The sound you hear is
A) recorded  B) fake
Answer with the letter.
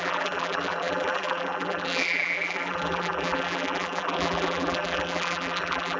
B